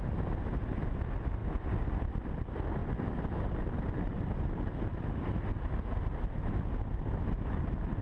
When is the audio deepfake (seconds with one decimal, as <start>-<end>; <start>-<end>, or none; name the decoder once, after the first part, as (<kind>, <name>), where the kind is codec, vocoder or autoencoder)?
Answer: none